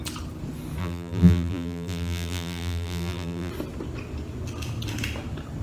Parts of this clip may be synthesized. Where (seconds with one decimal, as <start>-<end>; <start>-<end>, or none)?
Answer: 0.8-3.5